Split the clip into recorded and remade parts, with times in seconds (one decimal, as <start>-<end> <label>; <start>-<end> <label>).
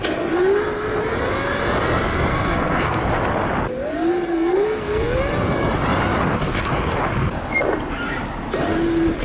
0.0-2.3 recorded; 2.3-3.0 remade; 3.0-4.3 recorded; 4.3-5.2 remade; 5.2-9.2 recorded